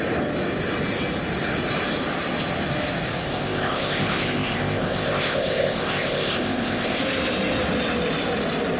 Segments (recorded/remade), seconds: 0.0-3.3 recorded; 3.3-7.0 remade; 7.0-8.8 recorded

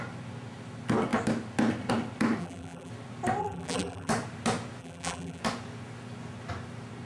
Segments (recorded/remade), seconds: 0.0-2.4 recorded; 2.4-2.9 remade; 2.9-3.4 recorded; 3.4-4.1 remade; 4.1-4.8 recorded; 4.8-5.4 remade; 5.4-7.1 recorded

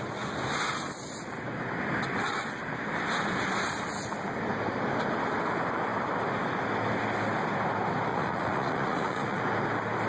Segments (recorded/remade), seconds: 0.0-8.1 recorded; 8.1-9.4 remade; 9.4-10.1 recorded

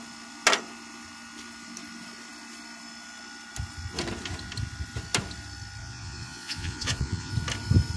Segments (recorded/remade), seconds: 0.0-5.8 recorded; 5.8-7.3 remade; 7.3-8.0 recorded